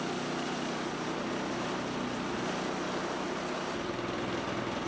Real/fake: real